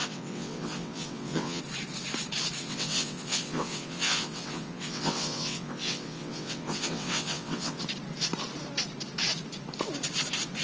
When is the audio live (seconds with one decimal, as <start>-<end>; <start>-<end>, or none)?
1.6-2.6; 7.8-10.6